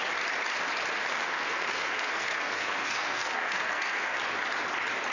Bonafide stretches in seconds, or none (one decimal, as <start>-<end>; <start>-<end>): 0.0-1.1; 4.2-5.1